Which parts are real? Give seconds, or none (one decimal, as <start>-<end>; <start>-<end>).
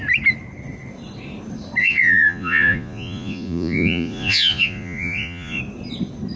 0.0-1.8; 5.6-6.4